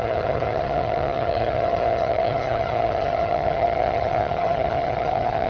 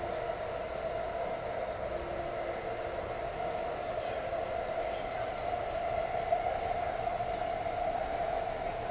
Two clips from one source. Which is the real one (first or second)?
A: second